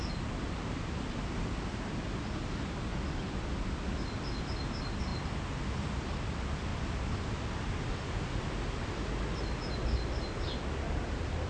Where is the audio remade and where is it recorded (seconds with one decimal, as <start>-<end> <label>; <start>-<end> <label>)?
0.0-11.5 recorded